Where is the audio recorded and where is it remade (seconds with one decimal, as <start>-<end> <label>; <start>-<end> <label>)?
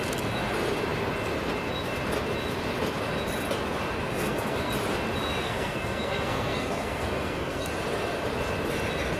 0.0-4.1 recorded; 4.1-4.7 remade; 4.7-5.4 recorded; 5.4-7.7 remade; 7.7-9.2 recorded